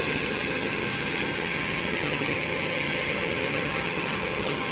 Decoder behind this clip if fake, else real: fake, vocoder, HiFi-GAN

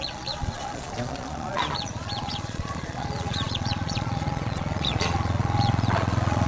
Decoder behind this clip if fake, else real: fake, vocoder, Vocos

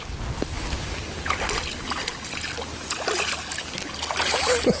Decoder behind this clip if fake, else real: real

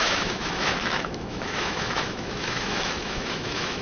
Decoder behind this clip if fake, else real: fake, autoencoder, DAC-VAE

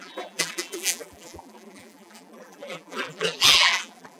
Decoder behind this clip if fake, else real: fake, vocoder, BigVGAN v2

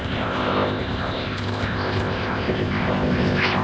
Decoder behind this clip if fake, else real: fake, codec, ZipCodec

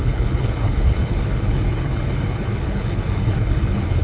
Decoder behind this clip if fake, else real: fake, codec, HILCodec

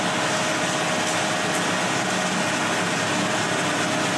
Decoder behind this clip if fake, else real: real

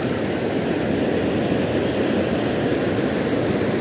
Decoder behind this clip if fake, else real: real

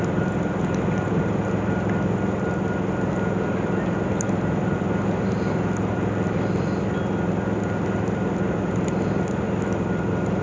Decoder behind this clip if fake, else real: real